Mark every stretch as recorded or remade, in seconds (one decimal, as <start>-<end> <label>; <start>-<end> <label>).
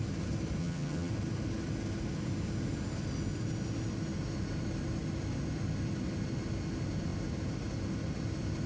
0.0-0.6 recorded; 0.6-1.1 remade; 1.1-8.7 recorded